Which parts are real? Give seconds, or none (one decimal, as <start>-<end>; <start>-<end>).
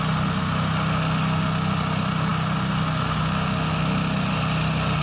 0.0-5.0